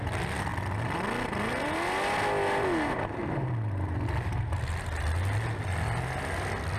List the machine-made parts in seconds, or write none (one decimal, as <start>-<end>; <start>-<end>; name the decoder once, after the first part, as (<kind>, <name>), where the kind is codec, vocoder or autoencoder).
none